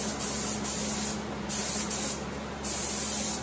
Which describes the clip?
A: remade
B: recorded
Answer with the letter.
B